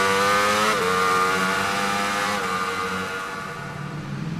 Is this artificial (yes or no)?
no